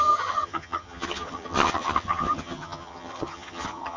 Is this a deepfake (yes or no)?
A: yes